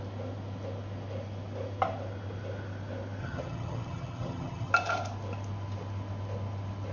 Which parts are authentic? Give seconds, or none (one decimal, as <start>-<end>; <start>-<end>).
0.0-3.2; 4.7-6.9